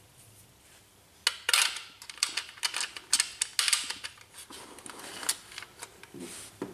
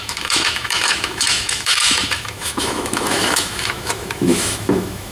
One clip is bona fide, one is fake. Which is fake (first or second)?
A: second